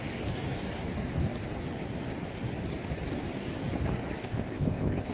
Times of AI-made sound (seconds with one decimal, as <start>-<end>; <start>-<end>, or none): 4.2-5.1